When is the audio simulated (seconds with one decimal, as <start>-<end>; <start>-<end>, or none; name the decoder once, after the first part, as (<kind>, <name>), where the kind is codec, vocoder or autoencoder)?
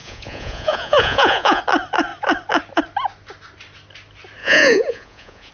0.0-1.6 (vocoder, Vocos); 4.4-5.5